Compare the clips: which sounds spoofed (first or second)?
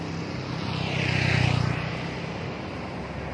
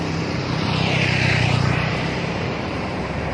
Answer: second